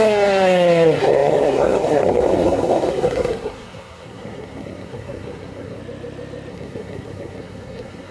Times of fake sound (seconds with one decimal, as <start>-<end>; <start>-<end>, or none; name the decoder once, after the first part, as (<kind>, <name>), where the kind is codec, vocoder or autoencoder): 0.0-5.8 (codec, SNAC); 6.5-8.1